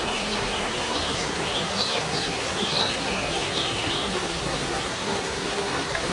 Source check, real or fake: fake